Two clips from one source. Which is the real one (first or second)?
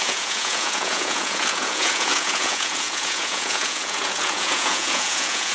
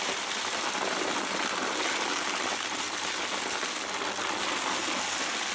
second